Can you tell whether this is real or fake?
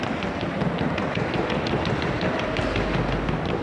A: real